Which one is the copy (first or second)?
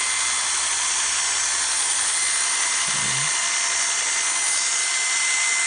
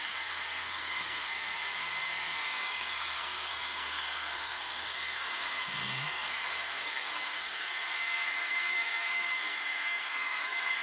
second